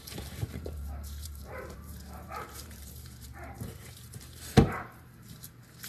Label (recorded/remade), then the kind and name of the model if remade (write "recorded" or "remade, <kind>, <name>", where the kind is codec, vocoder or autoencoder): remade, vocoder, BigVGAN v2